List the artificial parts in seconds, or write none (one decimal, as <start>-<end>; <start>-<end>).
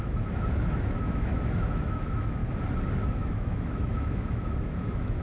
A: 0.0-2.4; 3.1-5.2